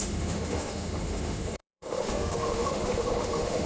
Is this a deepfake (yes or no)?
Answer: yes